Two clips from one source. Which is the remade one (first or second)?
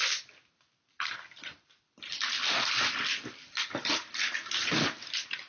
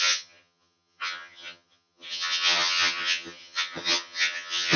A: second